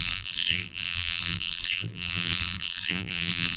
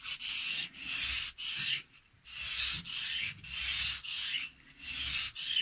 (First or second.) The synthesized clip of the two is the first